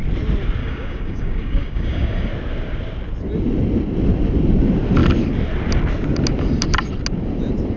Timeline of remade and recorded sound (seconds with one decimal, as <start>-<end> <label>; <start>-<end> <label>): 0.0-0.6 recorded; 0.6-2.3 remade; 2.3-7.8 recorded